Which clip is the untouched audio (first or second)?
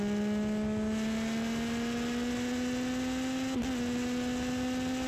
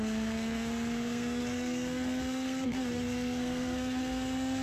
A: first